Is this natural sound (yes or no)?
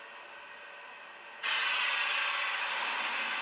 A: yes